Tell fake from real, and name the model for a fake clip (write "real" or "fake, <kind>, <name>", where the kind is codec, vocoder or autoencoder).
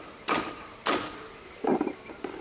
real